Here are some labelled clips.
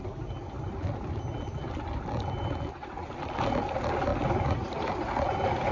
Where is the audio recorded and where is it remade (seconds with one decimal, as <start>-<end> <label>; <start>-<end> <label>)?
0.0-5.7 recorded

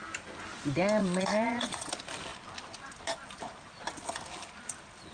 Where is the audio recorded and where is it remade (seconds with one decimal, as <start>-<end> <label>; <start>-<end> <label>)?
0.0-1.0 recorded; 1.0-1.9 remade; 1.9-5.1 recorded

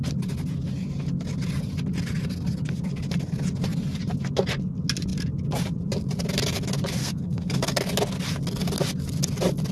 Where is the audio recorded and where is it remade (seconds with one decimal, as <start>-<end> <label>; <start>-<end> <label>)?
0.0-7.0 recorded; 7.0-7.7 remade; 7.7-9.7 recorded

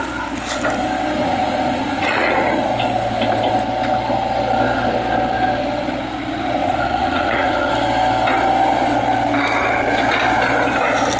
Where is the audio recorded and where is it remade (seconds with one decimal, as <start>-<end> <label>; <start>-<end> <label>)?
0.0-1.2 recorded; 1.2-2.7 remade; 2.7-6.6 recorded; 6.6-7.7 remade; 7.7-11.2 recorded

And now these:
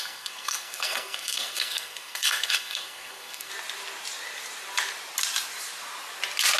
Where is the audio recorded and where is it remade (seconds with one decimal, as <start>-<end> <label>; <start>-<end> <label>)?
0.0-3.5 remade; 3.5-6.6 recorded

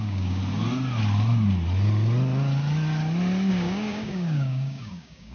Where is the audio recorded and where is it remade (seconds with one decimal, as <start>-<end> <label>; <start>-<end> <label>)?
0.0-0.4 remade; 0.4-3.5 recorded; 3.5-5.3 remade

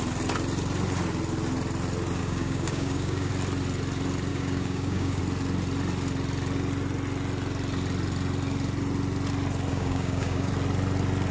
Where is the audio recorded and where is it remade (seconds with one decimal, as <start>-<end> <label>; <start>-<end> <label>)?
0.0-2.2 recorded; 2.2-3.3 remade; 3.3-4.3 recorded; 4.3-5.2 remade; 5.2-9.7 recorded; 9.7-10.5 remade; 10.5-11.3 recorded